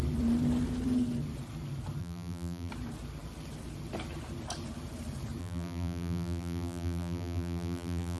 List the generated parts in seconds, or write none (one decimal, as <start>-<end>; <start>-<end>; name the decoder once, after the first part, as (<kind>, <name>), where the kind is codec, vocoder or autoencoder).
2.0-2.7 (vocoder, BigVGAN v2); 5.4-8.2